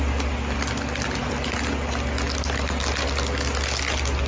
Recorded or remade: recorded